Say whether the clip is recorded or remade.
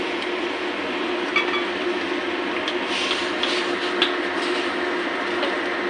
recorded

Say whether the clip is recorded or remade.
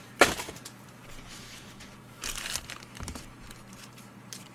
remade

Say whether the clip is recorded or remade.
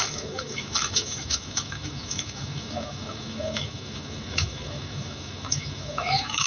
remade